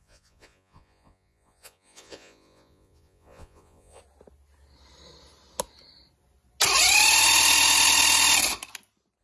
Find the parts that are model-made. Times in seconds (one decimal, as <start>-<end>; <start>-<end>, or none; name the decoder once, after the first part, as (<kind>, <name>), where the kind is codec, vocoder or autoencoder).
0.0-4.0 (vocoder, Vocos)